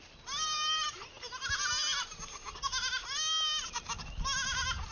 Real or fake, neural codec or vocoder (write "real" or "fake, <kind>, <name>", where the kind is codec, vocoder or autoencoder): real